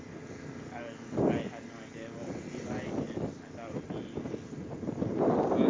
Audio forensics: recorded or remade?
recorded